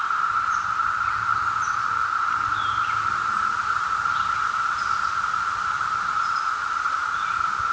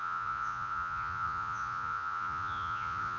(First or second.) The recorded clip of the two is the first